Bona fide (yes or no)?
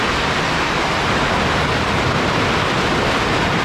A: yes